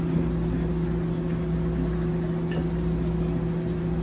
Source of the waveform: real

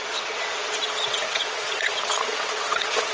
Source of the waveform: fake